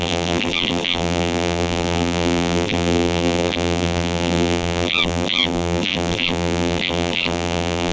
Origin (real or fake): fake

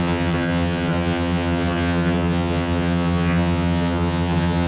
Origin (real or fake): fake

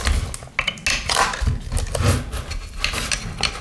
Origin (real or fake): real